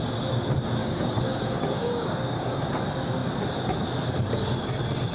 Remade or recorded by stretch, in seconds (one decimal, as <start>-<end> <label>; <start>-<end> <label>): 0.0-0.8 recorded; 0.8-2.7 remade; 2.7-5.1 recorded